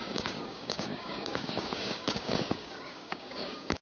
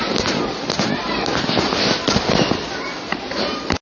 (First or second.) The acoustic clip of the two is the second